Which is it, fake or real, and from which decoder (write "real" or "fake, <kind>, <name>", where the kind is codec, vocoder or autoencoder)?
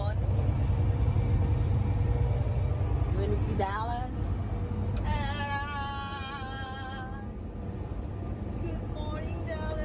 real